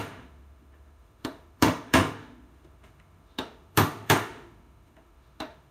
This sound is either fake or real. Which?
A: fake